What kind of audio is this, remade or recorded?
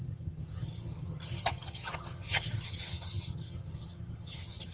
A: remade